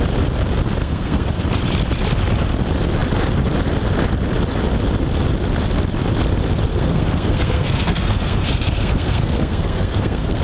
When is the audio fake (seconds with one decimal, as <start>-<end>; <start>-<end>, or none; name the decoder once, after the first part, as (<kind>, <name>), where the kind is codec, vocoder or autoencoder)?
0.8-1.4 (codec, SNAC); 6.7-10.4